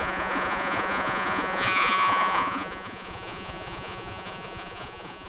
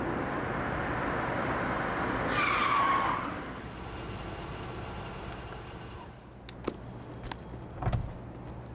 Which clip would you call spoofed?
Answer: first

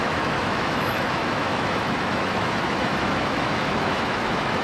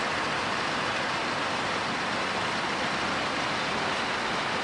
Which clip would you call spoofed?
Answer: first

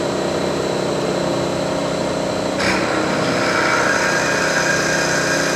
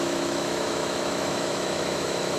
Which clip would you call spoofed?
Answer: second